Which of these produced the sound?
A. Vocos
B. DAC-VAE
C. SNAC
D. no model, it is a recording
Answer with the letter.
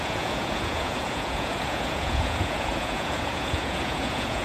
A